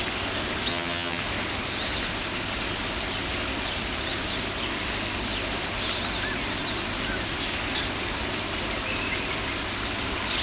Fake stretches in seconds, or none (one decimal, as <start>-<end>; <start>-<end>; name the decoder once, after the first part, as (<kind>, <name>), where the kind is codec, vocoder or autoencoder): 0.7-1.2 (vocoder, HiFi-GAN)